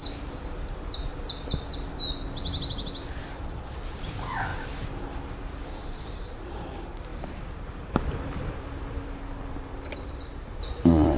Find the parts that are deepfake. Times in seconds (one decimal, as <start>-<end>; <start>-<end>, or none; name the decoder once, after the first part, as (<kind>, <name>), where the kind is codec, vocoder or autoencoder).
0.0-1.1 (vocoder, BigVGAN v2); 3.7-4.5; 5.8-7.1; 9.5-11.2